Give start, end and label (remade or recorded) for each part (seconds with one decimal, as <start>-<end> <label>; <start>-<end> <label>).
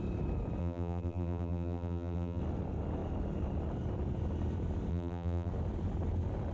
0.0-0.6 recorded; 0.6-2.4 remade; 2.4-4.9 recorded; 4.9-5.5 remade; 5.5-6.5 recorded